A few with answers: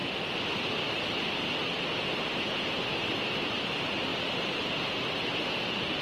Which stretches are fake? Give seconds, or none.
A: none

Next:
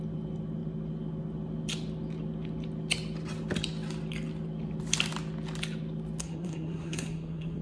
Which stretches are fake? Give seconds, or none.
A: 6.2-7.6

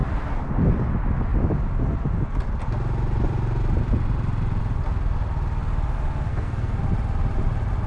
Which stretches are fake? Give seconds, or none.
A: 6.3-6.8

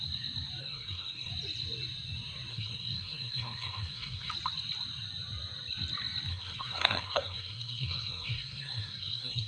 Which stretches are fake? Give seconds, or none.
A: 0.6-1.3; 2.5-4.3; 6.3-9.5

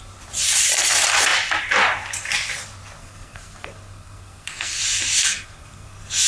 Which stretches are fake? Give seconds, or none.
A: 3.0-4.8; 5.3-6.3

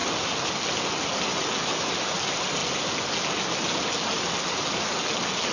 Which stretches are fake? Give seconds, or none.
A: none

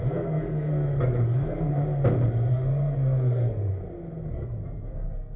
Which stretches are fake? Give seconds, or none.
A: 0.0-1.7; 2.5-3.7; 4.3-5.4